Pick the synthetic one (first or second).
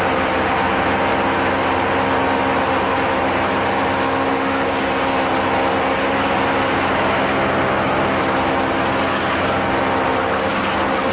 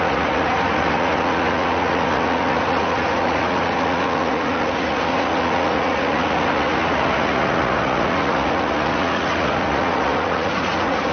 second